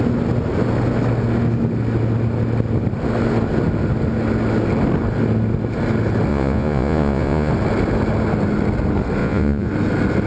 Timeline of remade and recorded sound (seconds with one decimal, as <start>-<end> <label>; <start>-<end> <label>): 0.0-6.3 recorded; 6.3-7.5 remade; 7.5-9.2 recorded; 9.2-9.7 remade; 9.7-10.3 recorded